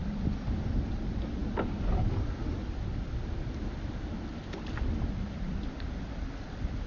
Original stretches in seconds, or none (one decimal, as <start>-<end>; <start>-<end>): 0.0-6.9